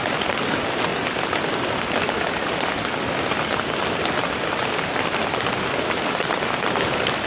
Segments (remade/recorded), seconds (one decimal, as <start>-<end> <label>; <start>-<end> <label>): 0.0-0.9 remade; 0.9-3.8 recorded; 3.8-7.3 remade

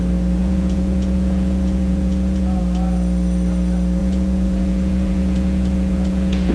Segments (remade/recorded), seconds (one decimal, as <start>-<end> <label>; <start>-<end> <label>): 0.0-0.4 recorded; 0.4-2.6 remade; 2.6-4.0 recorded; 4.0-6.5 remade

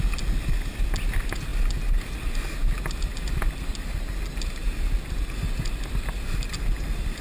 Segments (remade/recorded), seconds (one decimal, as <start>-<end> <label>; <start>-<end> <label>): 0.0-7.2 recorded

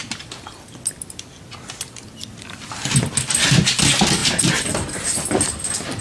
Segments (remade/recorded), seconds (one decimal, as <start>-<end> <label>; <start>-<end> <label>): 0.0-3.6 remade; 3.6-4.2 recorded; 4.2-5.6 remade; 5.6-6.0 recorded

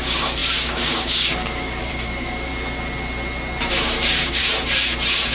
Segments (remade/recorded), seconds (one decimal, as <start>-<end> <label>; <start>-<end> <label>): 0.0-2.5 remade; 2.5-3.7 recorded; 3.7-4.4 remade; 4.4-5.3 recorded

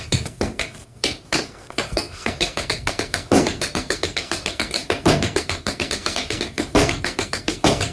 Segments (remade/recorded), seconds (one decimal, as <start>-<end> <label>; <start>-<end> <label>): 0.0-7.9 remade

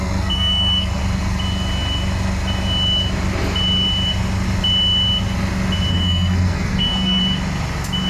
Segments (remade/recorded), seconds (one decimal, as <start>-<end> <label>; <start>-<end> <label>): 0.0-1.0 remade; 1.0-5.9 recorded; 5.9-7.2 remade; 7.2-8.1 recorded